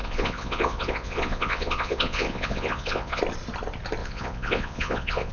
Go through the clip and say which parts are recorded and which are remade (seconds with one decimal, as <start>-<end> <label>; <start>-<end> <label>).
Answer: 0.0-3.2 remade; 3.2-4.0 recorded; 4.0-5.3 remade